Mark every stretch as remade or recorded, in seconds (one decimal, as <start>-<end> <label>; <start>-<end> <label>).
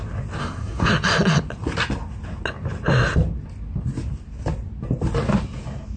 0.0-0.4 recorded; 0.4-0.9 remade; 0.9-6.0 recorded